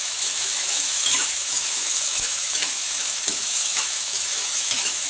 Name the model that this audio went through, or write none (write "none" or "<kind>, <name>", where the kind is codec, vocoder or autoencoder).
autoencoder, DAC-VAE